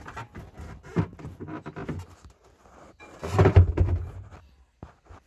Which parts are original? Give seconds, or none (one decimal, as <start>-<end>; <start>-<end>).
0.0-5.3